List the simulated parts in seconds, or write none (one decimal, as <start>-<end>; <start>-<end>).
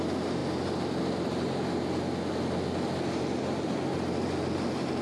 none